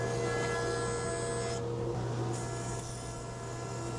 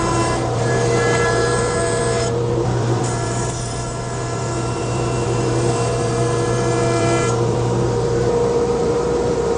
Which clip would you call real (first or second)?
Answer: first